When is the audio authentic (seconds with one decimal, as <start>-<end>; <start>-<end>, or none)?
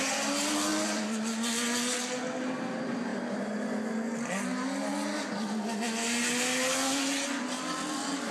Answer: 0.0-8.3